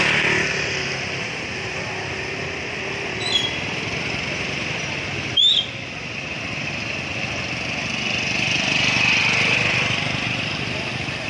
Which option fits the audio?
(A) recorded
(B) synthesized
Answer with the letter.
A